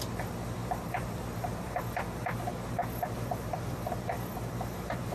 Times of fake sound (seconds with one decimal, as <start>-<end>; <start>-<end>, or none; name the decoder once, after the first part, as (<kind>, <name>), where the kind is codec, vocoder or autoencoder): 0.6-1.8 (vocoder, BigVGAN v2); 2.8-5.1